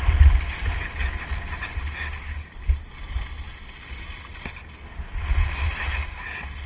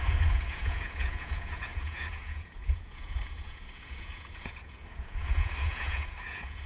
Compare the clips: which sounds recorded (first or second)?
first